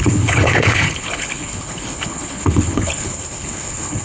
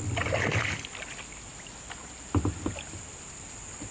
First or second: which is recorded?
second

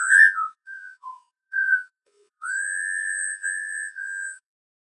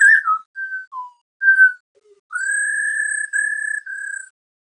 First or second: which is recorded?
second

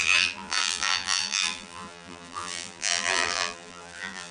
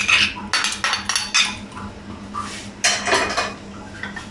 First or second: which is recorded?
second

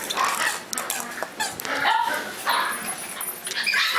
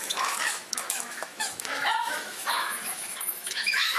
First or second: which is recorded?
first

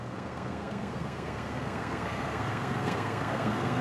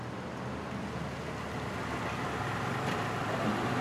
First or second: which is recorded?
second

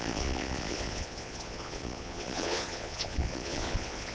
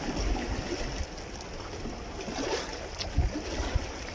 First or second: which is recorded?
second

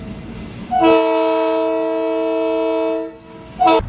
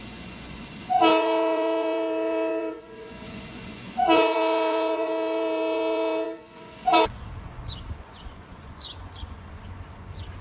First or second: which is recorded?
first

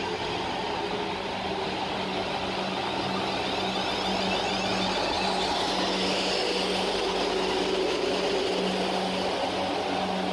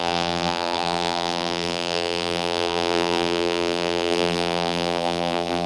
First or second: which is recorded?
first